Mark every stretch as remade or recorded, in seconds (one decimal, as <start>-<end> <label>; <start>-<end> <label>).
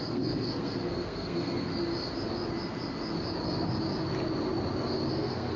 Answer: 0.0-1.7 remade; 1.7-5.1 recorded; 5.1-5.6 remade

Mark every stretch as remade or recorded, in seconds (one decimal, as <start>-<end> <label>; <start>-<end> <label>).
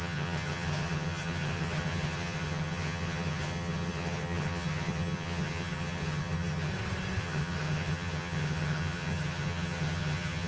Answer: 0.0-6.7 remade; 6.7-7.2 recorded; 7.2-10.5 remade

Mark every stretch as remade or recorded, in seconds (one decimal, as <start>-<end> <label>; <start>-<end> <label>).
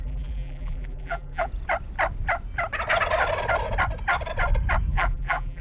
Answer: 0.0-1.5 remade; 1.5-4.9 recorded; 4.9-5.6 remade